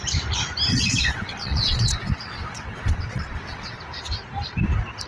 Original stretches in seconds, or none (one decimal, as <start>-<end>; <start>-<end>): 0.0-0.7; 3.8-5.1